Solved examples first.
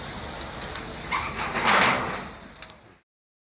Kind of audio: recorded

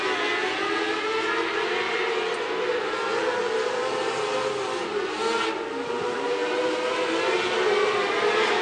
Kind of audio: recorded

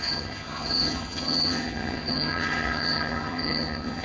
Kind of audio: remade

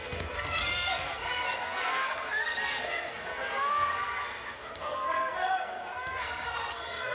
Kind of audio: remade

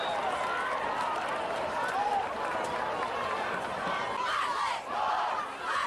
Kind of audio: remade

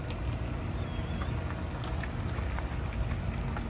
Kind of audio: recorded